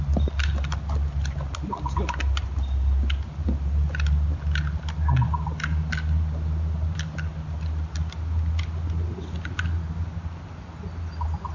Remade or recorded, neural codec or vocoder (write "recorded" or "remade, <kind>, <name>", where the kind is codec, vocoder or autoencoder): recorded